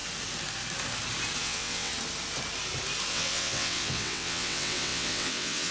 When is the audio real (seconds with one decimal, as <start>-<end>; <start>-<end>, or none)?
0.0-1.4; 1.9-3.1